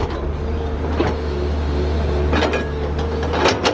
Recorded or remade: recorded